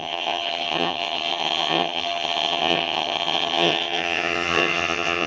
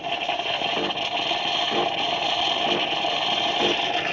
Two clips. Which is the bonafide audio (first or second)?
second